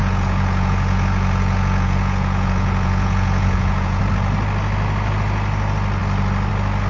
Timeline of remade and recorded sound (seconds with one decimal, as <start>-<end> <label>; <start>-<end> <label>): 0.0-4.0 remade; 4.0-6.9 recorded